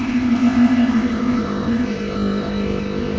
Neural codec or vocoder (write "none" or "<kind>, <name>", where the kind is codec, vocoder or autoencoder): codec, ZipCodec